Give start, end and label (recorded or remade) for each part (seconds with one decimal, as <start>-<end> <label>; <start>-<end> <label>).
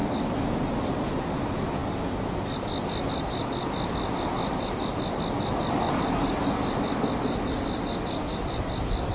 0.0-9.1 recorded